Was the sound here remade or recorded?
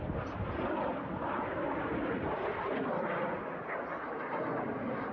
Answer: recorded